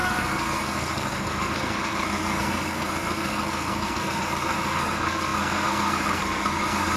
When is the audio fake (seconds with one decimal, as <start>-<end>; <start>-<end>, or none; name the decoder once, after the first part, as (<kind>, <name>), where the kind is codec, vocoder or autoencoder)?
0.0-7.0 (codec, SNAC)